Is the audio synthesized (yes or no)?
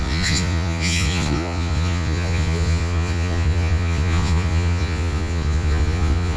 yes